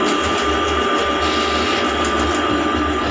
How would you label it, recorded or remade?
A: recorded